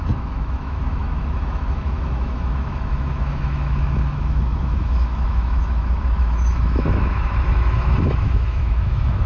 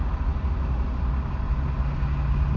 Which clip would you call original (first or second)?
second